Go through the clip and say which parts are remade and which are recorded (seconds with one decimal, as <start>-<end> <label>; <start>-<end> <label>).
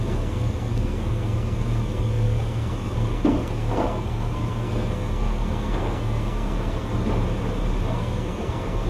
0.0-6.9 remade; 6.9-7.9 recorded; 7.9-8.9 remade